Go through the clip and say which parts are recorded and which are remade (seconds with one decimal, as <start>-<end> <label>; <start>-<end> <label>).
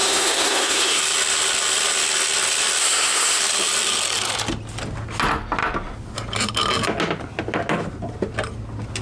0.0-1.0 remade; 1.0-2.8 recorded; 2.8-3.4 remade; 3.4-9.0 recorded